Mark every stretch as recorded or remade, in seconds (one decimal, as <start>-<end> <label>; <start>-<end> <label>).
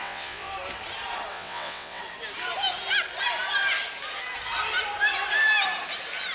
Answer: 0.0-0.5 remade; 0.5-1.3 recorded; 1.3-2.0 remade; 2.0-6.3 recorded